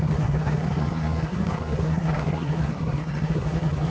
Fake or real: fake